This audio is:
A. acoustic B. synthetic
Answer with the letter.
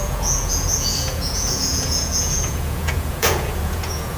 B